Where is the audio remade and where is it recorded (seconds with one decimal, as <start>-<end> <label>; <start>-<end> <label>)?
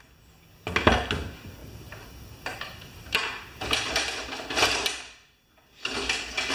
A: 0.0-1.6 recorded; 1.6-3.9 remade; 3.9-6.5 recorded